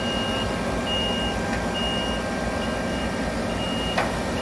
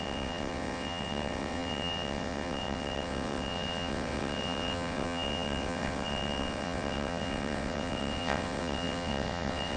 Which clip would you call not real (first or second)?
second